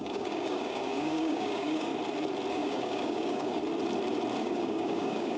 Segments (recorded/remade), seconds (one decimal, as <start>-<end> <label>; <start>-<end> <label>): 0.0-1.9 remade; 1.9-2.5 recorded; 2.5-3.6 remade; 3.6-4.4 recorded; 4.4-5.4 remade